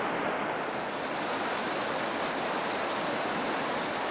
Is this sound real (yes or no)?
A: yes